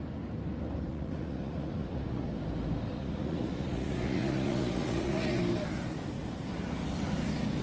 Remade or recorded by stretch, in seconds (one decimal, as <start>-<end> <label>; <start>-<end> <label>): 0.0-0.9 recorded; 0.9-2.3 remade; 2.3-2.9 recorded; 2.9-5.4 remade; 5.4-7.6 recorded